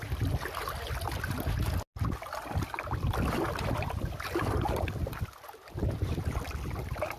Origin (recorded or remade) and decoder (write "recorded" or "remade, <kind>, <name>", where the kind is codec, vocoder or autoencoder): recorded